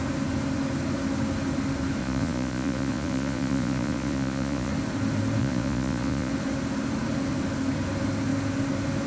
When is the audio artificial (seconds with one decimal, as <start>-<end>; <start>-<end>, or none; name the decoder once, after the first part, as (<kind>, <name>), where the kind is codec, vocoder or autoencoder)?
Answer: 2.0-4.7 (vocoder, Vocos); 5.4-6.3